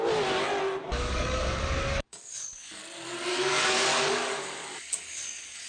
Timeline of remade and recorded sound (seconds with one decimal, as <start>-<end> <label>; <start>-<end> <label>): 0.0-0.9 recorded; 0.9-2.8 remade; 2.8-3.3 recorded; 3.3-5.7 remade